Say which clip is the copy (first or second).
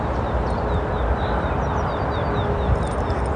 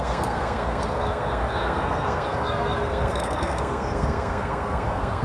second